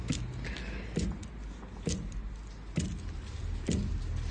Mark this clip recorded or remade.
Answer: recorded